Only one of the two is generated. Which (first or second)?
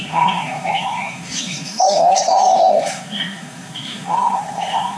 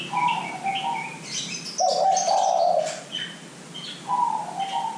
first